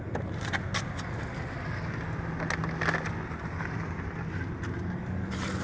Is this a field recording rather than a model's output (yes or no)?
yes